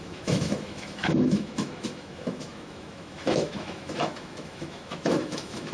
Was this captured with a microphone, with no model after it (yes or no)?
no